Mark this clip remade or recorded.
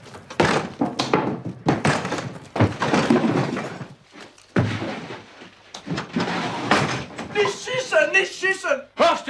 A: remade